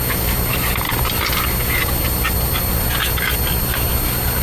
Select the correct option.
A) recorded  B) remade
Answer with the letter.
A